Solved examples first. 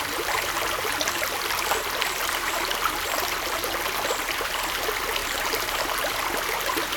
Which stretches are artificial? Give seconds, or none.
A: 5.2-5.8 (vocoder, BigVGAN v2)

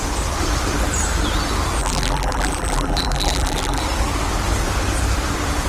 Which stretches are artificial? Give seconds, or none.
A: 1.8-3.8 (vocoder, BigVGAN v2)

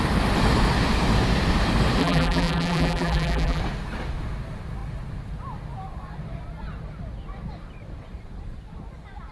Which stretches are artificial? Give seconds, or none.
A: 2.0-3.6 (vocoder, BigVGAN v2)